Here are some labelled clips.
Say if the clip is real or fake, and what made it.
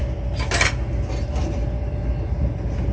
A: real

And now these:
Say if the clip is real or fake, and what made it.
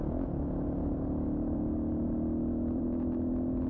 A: real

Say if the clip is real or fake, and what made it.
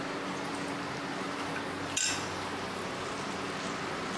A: real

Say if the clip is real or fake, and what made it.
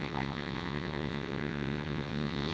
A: fake, vocoder, WaveNeXt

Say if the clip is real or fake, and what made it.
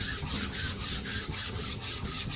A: fake, vocoder, HiFi-GAN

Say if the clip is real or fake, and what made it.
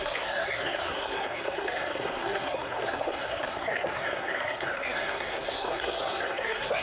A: fake, codec, SNAC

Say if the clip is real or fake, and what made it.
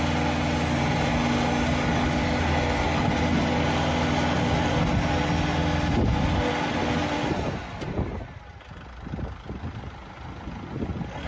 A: real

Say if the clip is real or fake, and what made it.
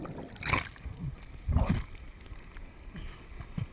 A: real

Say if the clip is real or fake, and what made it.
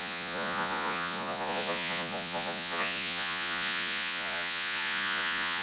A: fake, vocoder, Vocos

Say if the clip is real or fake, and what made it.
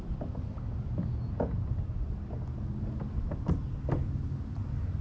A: real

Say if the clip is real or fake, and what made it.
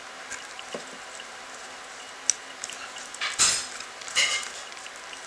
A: real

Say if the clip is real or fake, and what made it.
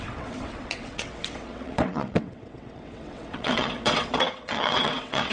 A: fake, vocoder, WaveNeXt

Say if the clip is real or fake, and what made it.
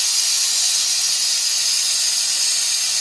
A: fake, vocoder, Vocos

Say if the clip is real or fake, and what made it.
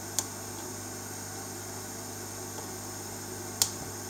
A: real